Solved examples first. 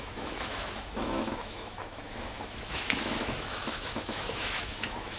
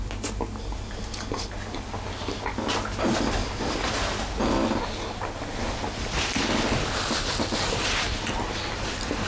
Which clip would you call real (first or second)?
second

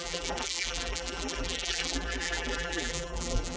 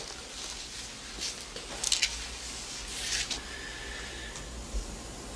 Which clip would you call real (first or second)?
second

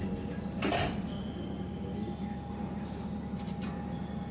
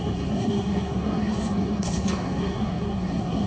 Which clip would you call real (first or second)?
first